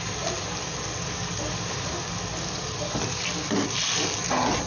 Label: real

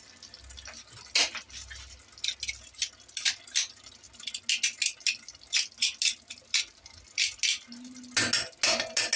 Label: real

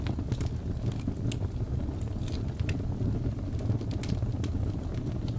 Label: real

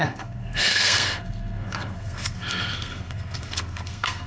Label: fake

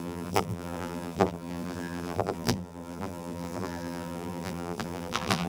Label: fake